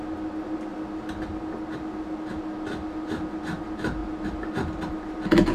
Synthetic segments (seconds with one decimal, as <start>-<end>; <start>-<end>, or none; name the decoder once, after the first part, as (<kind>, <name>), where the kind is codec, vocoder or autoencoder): 4.0-4.5 (vocoder, BigVGAN v2)